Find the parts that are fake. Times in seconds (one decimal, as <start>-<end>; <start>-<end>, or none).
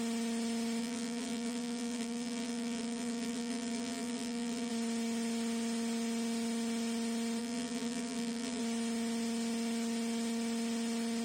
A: 0.8-4.7; 7.4-8.6